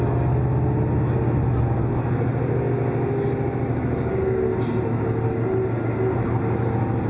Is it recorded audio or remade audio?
recorded